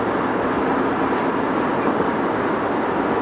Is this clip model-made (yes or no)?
no